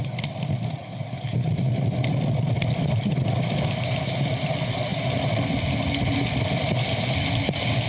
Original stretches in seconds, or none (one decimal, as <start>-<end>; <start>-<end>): 4.9-7.2